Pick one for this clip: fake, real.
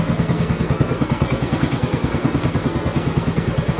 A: fake